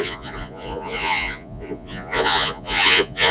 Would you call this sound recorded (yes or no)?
no